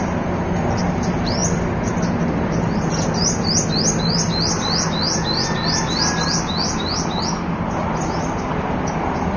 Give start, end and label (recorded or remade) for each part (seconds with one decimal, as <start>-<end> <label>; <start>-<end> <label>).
0.0-9.4 recorded